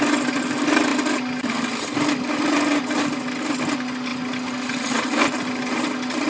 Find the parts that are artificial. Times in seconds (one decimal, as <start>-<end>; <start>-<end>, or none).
none

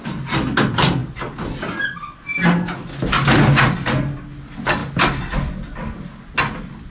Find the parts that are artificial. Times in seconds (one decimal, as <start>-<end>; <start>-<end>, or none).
none